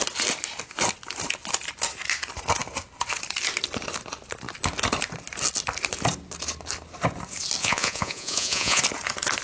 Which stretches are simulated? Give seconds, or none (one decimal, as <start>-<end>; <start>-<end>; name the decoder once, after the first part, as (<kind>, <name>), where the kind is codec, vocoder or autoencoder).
7.6-8.8 (vocoder, Vocos)